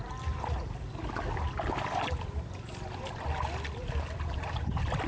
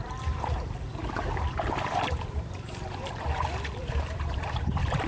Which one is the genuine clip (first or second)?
first